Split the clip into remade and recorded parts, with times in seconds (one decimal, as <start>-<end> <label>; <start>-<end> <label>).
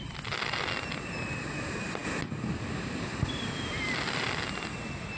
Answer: 0.0-5.2 recorded